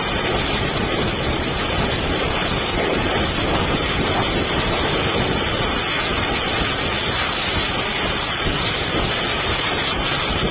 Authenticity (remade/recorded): recorded